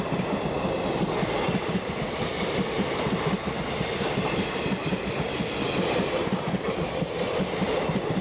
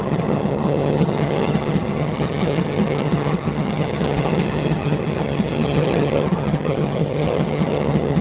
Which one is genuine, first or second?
first